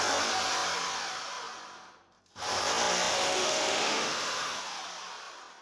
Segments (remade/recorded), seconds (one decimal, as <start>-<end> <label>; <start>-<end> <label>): 0.0-3.1 recorded; 3.1-4.6 remade; 4.6-5.6 recorded